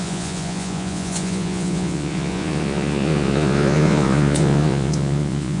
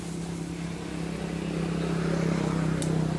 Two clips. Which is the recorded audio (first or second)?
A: second